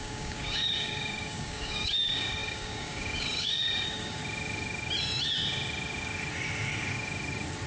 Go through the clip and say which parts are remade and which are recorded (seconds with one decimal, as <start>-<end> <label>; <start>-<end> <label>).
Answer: 0.0-4.2 remade; 4.2-7.7 recorded